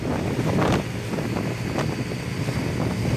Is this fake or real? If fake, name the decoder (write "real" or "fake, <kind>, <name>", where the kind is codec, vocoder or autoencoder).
real